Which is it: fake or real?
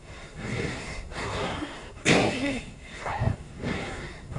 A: fake